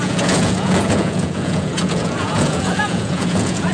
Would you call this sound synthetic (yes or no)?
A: yes